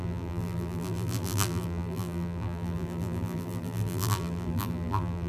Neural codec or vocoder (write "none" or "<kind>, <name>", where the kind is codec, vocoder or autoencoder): vocoder, BigVGAN v2